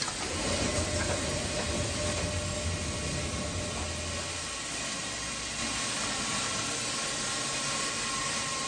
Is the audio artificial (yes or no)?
no